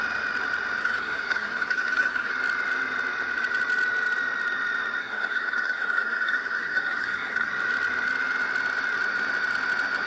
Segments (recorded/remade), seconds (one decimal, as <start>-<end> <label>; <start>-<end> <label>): 0.0-0.8 recorded; 0.8-2.3 remade; 2.3-5.0 recorded; 5.0-7.5 remade; 7.5-10.1 recorded